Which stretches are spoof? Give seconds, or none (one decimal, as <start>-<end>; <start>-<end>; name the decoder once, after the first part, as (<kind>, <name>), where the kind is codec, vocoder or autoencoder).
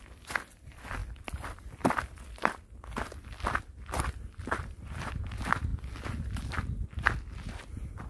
1.0-5.1 (vocoder, BigVGAN v2)